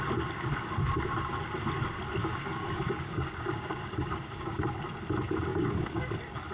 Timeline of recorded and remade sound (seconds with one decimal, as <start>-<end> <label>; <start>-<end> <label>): 0.0-2.2 recorded; 2.2-4.6 remade; 4.6-5.5 recorded; 5.5-6.1 remade; 6.1-6.5 recorded